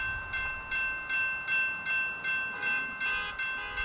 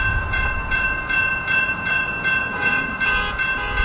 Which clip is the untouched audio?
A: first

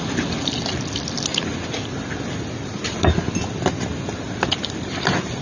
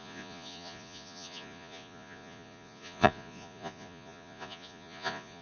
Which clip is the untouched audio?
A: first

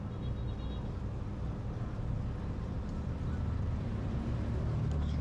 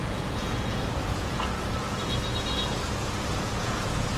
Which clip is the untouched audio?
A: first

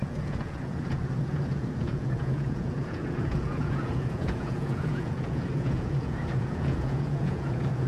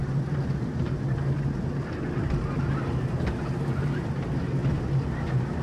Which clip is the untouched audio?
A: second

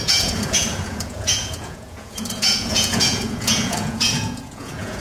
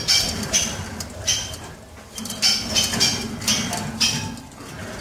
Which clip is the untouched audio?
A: second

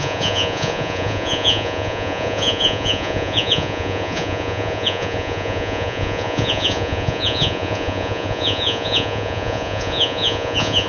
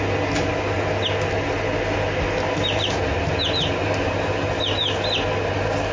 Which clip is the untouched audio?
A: second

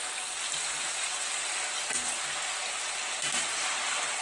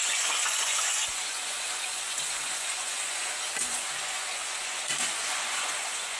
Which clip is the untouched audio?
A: first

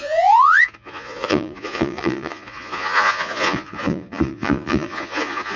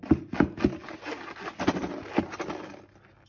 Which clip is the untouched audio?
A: second